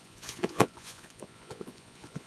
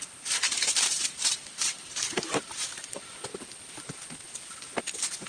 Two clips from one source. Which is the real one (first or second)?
second